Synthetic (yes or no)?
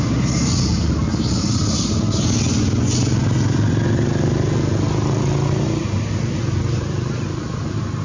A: no